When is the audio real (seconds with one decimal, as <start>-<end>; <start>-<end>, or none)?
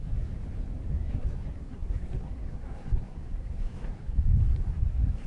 0.4-0.9